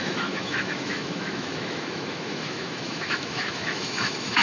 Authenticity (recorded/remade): remade